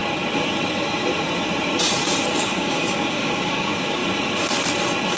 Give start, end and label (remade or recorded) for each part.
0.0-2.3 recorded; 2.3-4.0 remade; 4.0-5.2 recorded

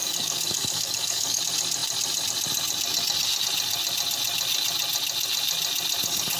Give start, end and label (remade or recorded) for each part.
0.0-1.4 remade; 1.4-6.4 recorded

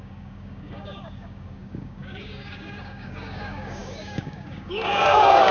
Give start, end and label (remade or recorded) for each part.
0.0-5.5 remade

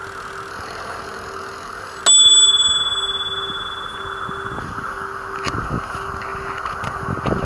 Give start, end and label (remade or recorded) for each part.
0.0-0.5 recorded; 0.5-2.0 remade; 2.0-4.6 recorded; 4.6-7.4 remade